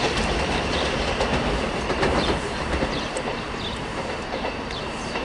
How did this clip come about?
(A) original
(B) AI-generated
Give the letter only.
B